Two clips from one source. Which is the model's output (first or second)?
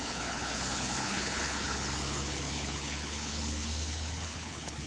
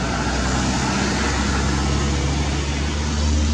first